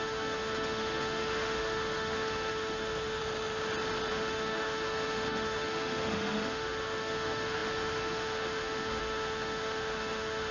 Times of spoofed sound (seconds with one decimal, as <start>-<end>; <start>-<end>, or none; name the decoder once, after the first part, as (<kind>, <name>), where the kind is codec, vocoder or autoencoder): 0.0-3.2 (autoencoder, DAC-VAE); 4.1-10.5